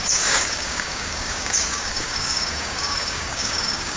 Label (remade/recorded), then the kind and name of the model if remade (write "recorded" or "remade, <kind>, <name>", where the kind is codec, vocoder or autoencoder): remade, codec, DAC